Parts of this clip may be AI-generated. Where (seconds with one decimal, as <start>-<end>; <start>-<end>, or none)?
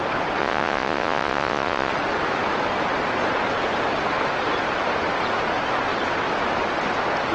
0.4-1.9